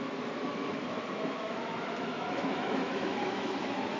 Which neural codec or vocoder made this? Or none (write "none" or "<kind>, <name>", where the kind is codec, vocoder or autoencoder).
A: autoencoder, DAC-VAE